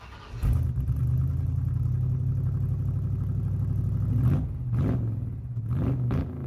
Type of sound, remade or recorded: recorded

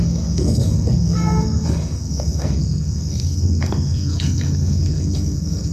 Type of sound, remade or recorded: remade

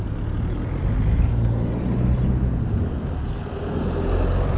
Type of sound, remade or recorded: recorded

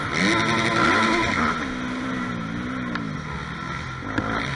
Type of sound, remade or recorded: recorded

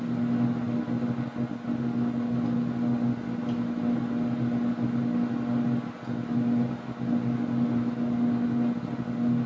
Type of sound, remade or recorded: recorded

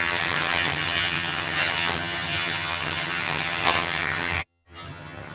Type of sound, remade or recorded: remade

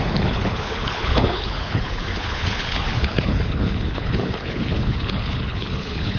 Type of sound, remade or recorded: remade